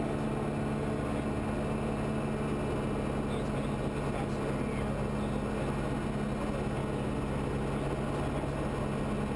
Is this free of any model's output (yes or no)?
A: yes